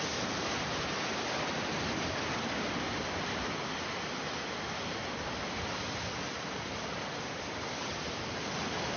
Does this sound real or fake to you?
real